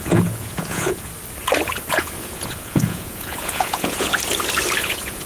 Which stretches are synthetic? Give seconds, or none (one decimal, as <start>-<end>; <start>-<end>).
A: 0.0-1.1; 1.9-4.1; 4.8-5.3